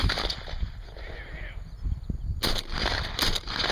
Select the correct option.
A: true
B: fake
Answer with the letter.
A